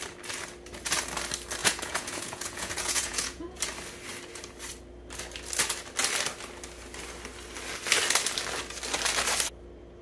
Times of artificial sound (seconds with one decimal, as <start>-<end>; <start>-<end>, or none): 1.6-3.6